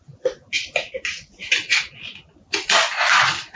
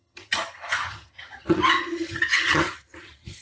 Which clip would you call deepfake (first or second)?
second